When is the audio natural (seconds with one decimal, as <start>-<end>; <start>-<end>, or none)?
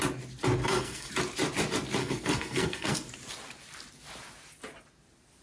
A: 0.0-0.6; 1.1-2.0; 3.1-5.4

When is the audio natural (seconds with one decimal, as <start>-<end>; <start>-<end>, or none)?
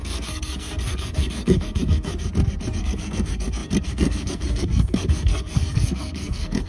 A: 2.1-2.8